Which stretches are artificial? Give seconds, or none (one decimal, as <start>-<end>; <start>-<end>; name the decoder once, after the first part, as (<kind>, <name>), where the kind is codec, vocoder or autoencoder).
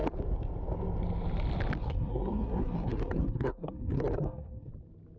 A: 1.8-4.7 (codec, SNAC)